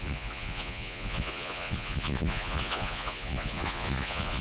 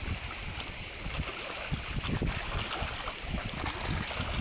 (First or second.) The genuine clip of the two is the second